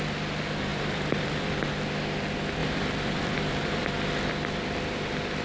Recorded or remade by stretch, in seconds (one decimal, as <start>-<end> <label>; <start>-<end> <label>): 0.0-0.7 recorded; 0.7-1.7 remade; 1.7-2.6 recorded; 2.6-4.3 remade; 4.3-5.4 recorded